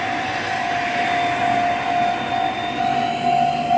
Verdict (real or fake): real